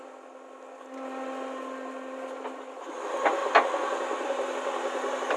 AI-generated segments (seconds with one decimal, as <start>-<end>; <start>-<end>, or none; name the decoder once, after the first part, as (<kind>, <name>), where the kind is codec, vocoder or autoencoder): none